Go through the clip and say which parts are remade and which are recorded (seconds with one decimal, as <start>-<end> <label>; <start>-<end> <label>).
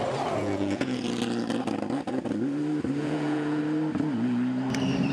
0.0-0.4 recorded; 0.4-1.0 remade; 1.0-3.0 recorded; 3.0-3.6 remade; 3.6-5.1 recorded